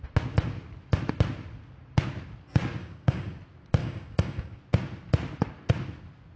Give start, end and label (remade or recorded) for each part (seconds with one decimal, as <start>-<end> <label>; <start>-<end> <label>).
0.0-2.8 recorded; 2.8-3.4 remade; 3.4-3.8 recorded; 3.8-4.6 remade; 4.6-6.4 recorded